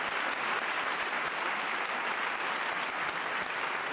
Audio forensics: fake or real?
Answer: real